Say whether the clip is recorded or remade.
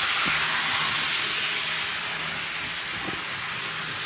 recorded